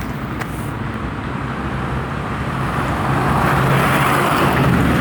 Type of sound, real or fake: real